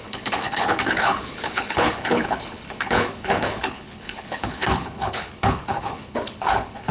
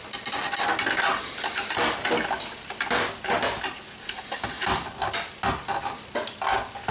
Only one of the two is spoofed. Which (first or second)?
first